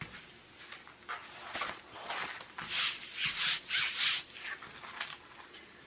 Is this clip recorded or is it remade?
recorded